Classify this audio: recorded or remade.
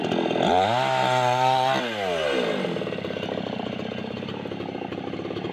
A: recorded